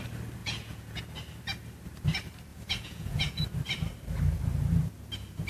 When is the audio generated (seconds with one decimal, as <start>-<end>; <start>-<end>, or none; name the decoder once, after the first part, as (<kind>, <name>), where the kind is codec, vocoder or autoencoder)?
0.4-1.0 (vocoder, Vocos); 2.5-3.4